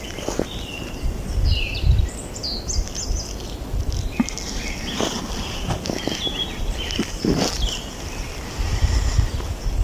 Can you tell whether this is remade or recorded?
recorded